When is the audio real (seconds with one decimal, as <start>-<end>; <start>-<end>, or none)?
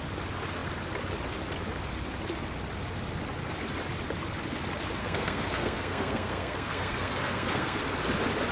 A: 0.0-5.0; 7.8-8.5